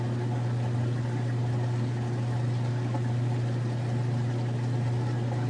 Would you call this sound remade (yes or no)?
no